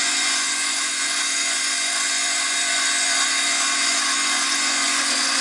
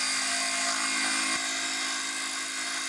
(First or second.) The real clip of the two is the second